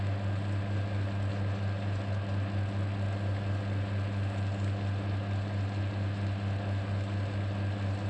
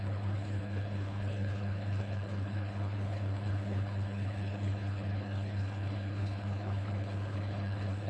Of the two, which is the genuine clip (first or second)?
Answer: first